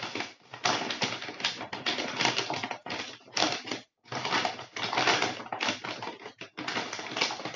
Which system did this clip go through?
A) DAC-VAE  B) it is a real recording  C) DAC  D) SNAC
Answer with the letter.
B